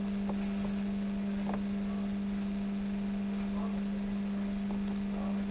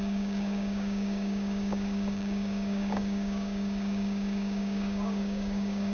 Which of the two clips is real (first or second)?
first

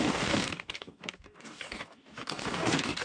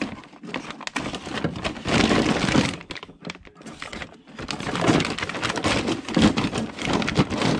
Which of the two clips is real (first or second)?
second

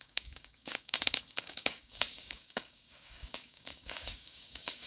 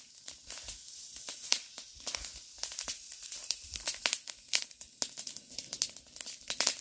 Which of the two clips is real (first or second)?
second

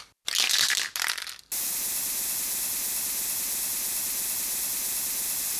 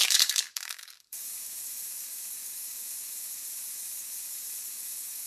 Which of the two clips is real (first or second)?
first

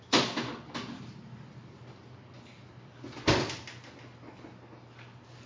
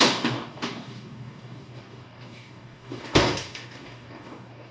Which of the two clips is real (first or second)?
first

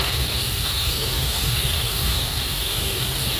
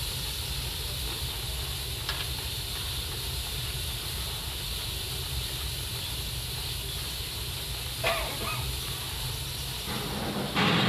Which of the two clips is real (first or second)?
second